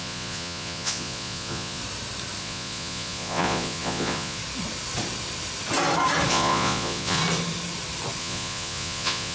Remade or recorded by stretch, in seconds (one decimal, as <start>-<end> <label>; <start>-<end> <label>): 0.0-1.8 remade; 1.8-2.4 recorded; 2.4-4.4 remade; 4.4-6.3 recorded; 6.3-7.2 remade; 7.2-8.2 recorded; 8.2-9.3 remade